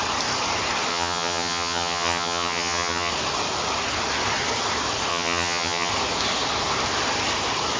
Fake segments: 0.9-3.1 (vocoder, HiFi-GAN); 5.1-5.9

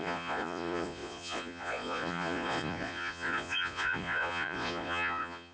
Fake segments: 0.0-5.5 (vocoder, Vocos)

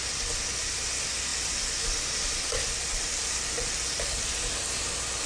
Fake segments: none

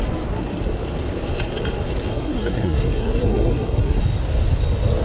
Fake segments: 2.1-4.0 (codec, SNAC)

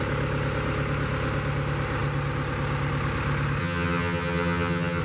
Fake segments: 3.6-5.0 (vocoder, HiFi-GAN)